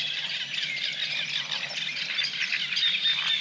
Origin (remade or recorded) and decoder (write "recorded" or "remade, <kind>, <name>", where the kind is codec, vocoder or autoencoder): remade, vocoder, BigVGAN v2